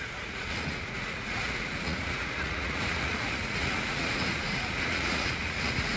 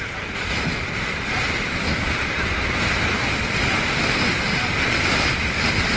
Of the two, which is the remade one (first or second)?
first